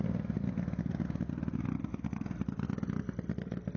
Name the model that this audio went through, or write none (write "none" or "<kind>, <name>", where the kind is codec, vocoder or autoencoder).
none